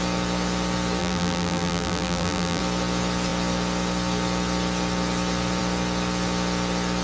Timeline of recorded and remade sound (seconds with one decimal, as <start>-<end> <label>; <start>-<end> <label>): 0.0-1.0 recorded; 1.0-2.6 remade; 2.6-7.0 recorded